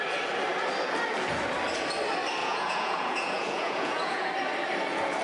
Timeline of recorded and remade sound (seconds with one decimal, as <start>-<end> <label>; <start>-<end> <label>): 0.0-2.4 recorded; 2.4-4.3 remade; 4.3-5.2 recorded